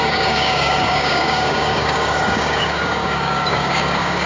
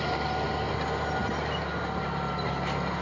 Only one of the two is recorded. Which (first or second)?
second